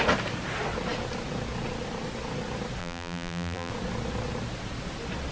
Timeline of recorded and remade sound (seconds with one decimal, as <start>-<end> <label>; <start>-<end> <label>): 0.0-2.8 recorded; 2.8-3.7 remade; 3.7-5.3 recorded